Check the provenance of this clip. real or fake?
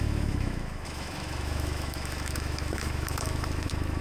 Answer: fake